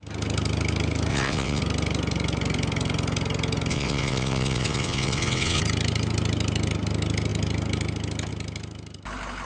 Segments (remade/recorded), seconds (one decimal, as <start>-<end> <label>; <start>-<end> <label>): 0.0-1.1 recorded; 1.1-1.6 remade; 1.6-3.7 recorded; 3.7-5.6 remade; 5.6-9.5 recorded